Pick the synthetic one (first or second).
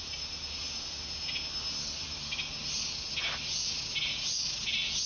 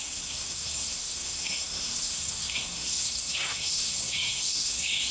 second